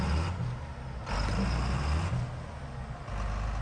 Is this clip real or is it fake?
real